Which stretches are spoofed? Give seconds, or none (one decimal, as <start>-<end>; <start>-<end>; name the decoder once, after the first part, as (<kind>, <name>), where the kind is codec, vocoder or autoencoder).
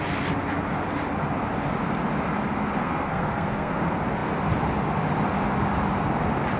2.8-3.8 (codec, SNAC)